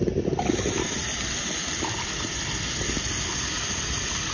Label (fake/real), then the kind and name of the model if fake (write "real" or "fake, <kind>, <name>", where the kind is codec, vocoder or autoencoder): real